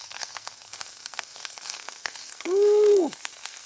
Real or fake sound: fake